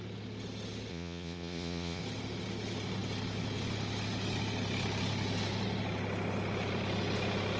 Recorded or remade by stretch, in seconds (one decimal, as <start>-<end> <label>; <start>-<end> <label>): 0.0-0.9 recorded; 0.9-2.0 remade; 2.0-7.6 recorded